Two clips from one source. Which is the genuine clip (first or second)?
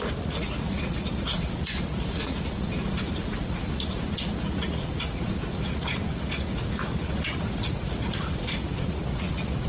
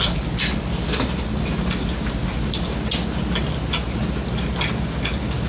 second